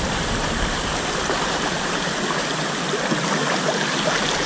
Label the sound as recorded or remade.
recorded